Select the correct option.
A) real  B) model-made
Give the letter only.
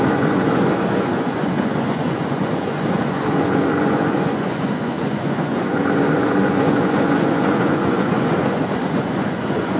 B